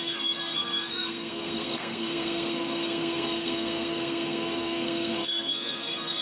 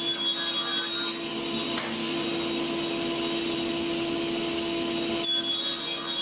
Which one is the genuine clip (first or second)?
second